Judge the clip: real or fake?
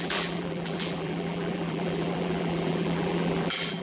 fake